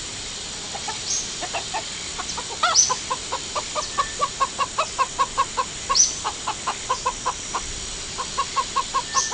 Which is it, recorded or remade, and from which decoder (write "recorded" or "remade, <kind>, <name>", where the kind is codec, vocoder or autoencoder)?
recorded